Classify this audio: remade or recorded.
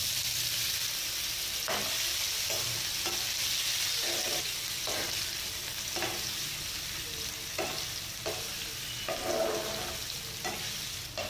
recorded